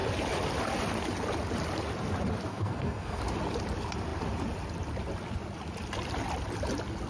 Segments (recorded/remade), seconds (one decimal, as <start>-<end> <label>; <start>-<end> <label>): 0.0-2.5 recorded; 2.5-3.2 remade; 3.2-7.1 recorded